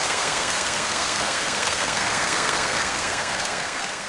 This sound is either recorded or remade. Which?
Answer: remade